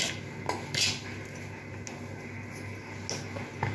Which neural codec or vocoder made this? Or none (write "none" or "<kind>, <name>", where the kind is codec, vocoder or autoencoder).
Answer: none